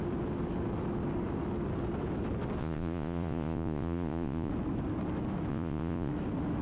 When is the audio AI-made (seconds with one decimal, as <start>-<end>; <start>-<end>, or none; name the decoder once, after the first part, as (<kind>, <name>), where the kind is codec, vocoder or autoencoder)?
2.6-4.5 (vocoder, Vocos); 5.5-6.1

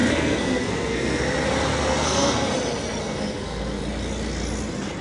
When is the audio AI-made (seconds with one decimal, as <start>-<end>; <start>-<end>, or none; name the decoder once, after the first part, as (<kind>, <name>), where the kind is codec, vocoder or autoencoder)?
0.0-1.2 (codec, SNAC); 1.7-2.5; 3.0-3.8